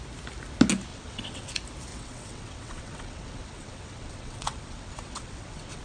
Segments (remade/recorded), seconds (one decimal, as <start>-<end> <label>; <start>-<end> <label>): 0.0-0.9 recorded; 0.9-1.5 remade; 1.5-1.9 recorded; 1.9-5.8 remade